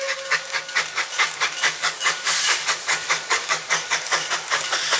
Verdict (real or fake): fake